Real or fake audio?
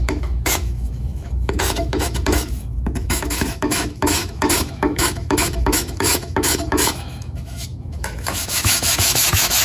fake